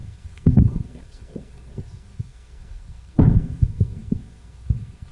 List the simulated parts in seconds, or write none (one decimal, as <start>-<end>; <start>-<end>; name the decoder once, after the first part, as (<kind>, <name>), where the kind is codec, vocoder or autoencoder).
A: 0.0-5.1 (codec, SNAC)